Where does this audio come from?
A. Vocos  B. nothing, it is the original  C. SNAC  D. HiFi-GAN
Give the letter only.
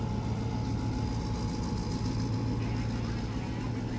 B